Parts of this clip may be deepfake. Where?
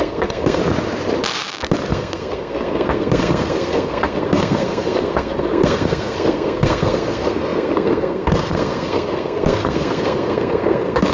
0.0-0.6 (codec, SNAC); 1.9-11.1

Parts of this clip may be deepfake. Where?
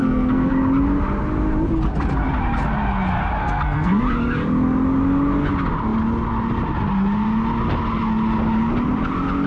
0.0-0.5 (codec, SNAC); 3.4-4.0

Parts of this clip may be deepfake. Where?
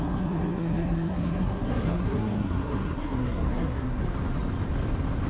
0.0-4.0 (codec, SNAC)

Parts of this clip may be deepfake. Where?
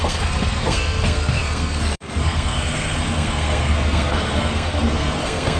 0.0-5.6 (codec, SNAC)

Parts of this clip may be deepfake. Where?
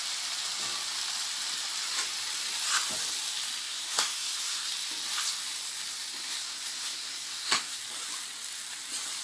3.6-4.7 (codec, SNAC); 6.1-7.8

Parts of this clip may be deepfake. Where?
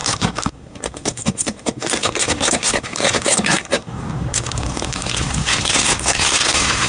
0.0-6.9 (codec, SNAC)